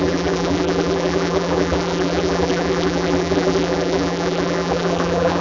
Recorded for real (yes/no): no